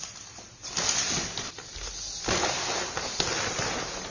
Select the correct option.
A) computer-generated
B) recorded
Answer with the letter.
B